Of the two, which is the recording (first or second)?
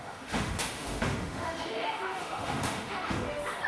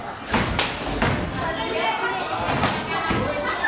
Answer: second